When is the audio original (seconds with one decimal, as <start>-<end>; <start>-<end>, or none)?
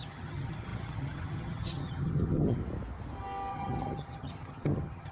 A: 2.6-3.5